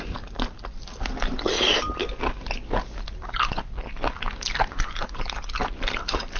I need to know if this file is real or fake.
real